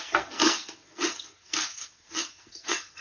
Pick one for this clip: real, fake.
fake